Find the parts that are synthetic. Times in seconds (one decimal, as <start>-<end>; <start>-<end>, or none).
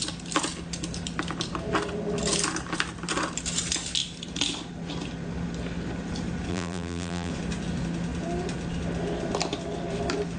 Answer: 6.5-7.3